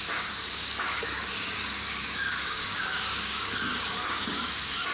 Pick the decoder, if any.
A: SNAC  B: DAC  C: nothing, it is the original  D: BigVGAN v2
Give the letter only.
B